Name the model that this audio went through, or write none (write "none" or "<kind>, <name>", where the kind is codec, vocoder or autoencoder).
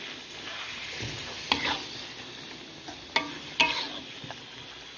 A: none